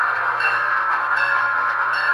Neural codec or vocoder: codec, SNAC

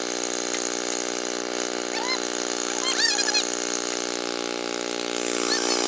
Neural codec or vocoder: none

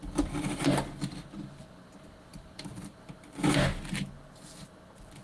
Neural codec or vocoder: none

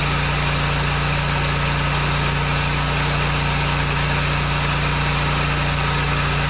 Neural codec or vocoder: none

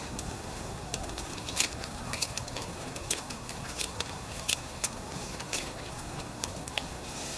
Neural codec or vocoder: codec, SNAC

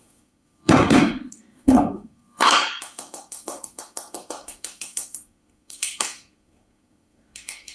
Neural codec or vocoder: codec, SNAC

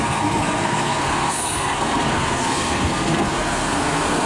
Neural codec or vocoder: codec, SNAC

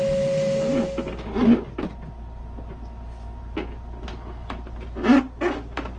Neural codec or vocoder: none